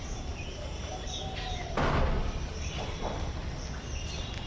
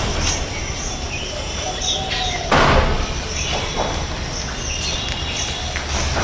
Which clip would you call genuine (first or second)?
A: second